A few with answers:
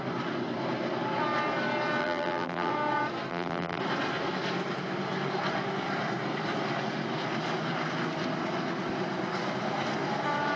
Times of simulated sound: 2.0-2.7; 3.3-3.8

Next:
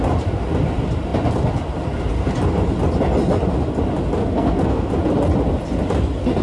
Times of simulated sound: 4.2-4.9

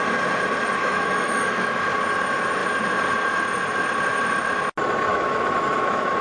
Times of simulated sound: 0.8-1.9; 5.1-6.2

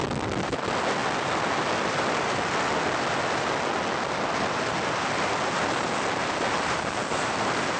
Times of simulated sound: none

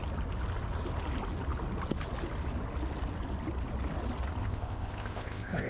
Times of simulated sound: 4.4-5.7

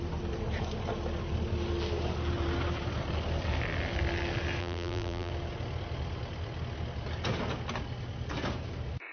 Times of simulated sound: 4.6-5.3